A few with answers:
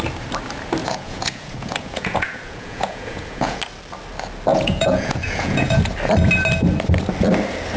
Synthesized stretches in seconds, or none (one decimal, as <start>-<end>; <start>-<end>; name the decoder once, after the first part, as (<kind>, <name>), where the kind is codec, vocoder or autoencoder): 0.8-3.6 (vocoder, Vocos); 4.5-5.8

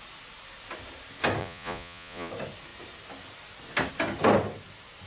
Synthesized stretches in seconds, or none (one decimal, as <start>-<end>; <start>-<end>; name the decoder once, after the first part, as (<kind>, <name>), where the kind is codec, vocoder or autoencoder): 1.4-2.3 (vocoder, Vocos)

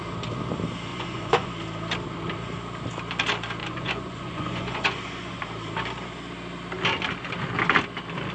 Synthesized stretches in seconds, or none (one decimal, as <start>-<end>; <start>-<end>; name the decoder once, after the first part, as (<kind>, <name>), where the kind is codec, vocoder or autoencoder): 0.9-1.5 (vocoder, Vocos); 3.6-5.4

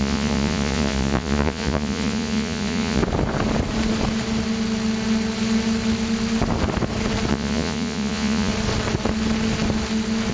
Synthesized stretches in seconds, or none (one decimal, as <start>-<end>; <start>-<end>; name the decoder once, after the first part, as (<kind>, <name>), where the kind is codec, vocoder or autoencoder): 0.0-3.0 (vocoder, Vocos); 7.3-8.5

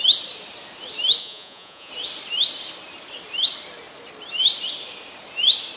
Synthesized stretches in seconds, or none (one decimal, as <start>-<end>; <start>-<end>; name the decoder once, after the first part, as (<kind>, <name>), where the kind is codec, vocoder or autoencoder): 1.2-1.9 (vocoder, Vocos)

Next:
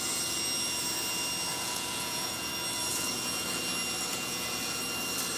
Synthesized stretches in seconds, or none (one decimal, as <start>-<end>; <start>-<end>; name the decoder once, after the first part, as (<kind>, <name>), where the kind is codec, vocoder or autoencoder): 1.5-2.5 (vocoder, Vocos); 2.9-3.6; 4.1-4.8